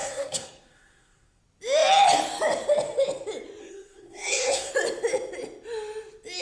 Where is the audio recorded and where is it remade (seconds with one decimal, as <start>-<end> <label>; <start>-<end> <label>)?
0.0-1.4 remade; 1.4-3.6 recorded; 3.6-4.7 remade; 4.7-6.4 recorded